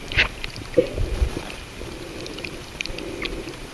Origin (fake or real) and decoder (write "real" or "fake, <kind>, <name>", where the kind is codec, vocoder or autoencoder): fake, vocoder, BigVGAN v2